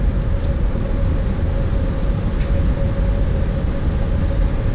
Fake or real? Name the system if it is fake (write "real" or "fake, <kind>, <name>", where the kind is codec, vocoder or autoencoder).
real